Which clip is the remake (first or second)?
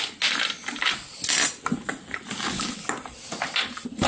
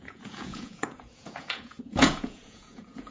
second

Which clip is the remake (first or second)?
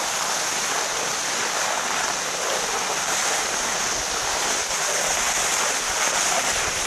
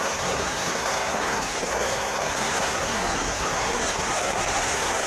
second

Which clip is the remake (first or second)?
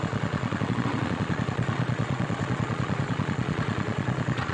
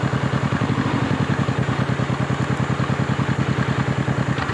first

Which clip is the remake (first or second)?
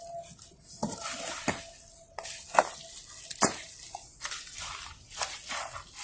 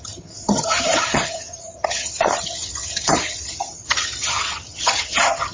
second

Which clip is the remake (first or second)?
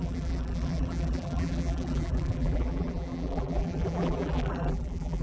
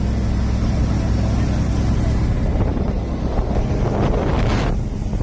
first